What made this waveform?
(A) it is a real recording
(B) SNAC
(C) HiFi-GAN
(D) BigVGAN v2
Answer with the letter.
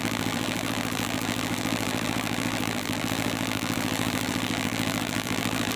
D